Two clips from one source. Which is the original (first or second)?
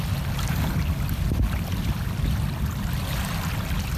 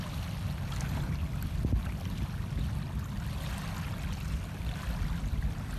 second